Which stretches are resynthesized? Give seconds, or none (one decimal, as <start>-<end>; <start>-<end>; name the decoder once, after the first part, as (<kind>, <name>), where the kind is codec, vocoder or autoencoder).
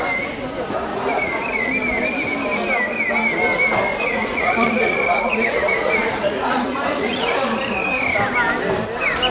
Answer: 0.9-1.7 (vocoder, Vocos); 3.9-7.3